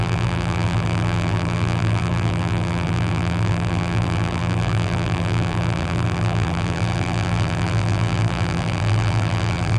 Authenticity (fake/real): fake